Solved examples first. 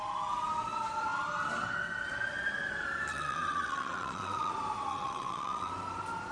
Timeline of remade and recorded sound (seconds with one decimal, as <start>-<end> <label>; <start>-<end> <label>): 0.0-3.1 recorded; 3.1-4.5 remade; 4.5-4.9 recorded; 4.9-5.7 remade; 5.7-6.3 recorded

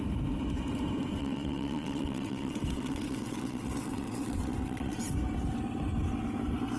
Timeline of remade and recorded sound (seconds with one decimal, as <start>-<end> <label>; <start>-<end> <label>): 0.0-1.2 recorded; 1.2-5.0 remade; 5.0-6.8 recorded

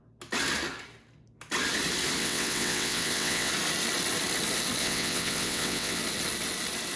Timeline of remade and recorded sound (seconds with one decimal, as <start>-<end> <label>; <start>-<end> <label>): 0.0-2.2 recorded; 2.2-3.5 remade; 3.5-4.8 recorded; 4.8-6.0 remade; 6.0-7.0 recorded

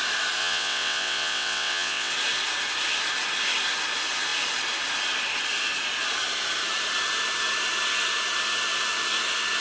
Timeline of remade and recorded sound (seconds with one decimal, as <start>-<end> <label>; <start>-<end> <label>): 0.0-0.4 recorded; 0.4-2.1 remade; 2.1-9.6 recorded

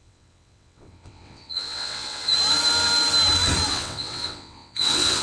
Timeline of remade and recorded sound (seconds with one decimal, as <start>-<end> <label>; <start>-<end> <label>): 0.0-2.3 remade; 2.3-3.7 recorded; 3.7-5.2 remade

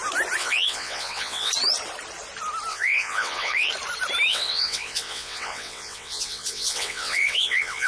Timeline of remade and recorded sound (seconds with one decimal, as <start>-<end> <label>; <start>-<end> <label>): 0.0-0.4 recorded; 0.4-1.5 remade; 1.5-2.7 recorded; 2.7-3.7 remade; 3.7-4.3 recorded; 4.3-7.9 remade

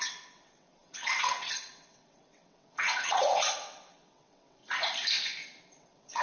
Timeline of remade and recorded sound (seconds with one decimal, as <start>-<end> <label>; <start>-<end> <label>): 0.0-4.6 remade; 4.6-5.6 recorded; 5.6-6.2 remade

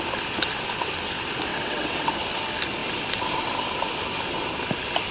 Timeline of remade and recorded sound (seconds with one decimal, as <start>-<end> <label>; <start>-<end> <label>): 0.0-1.5 recorded; 1.5-2.1 remade; 2.1-5.1 recorded